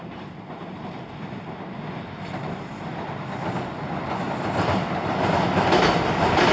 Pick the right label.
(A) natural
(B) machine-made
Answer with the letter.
A